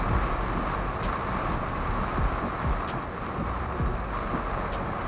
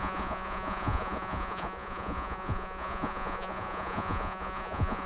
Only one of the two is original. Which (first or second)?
first